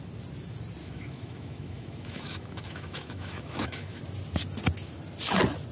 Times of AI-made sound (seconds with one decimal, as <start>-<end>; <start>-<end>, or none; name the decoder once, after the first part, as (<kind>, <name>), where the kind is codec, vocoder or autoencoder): 0.8-4.0 (autoencoder, DAC-VAE)